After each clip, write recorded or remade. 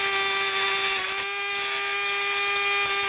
recorded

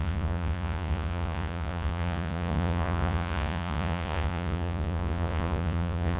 remade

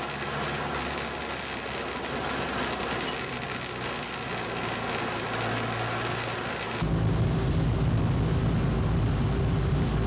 recorded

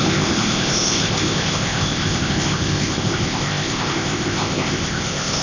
remade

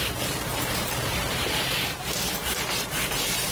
remade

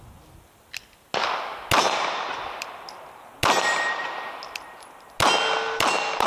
recorded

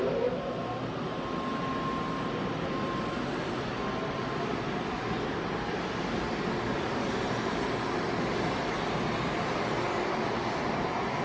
recorded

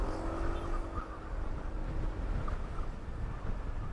recorded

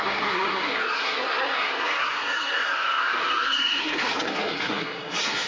remade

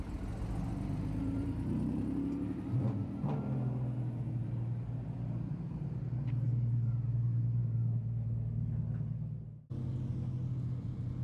recorded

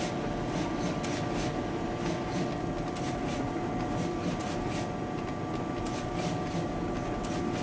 recorded